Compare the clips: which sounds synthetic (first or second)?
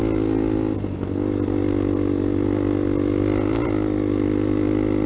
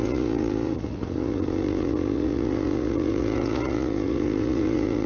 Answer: second